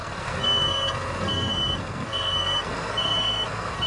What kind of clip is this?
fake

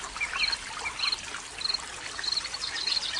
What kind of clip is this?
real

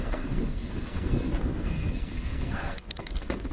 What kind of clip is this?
fake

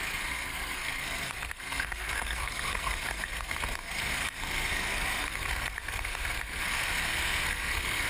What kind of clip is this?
fake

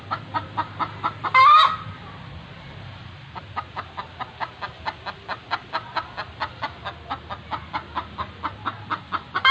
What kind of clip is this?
real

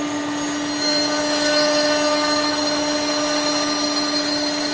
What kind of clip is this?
real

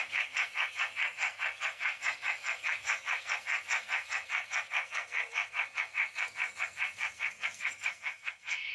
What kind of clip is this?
fake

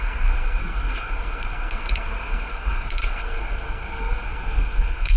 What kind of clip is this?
fake